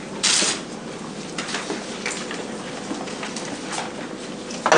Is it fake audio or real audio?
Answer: real